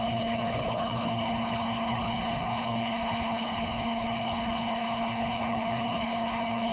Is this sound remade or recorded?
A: remade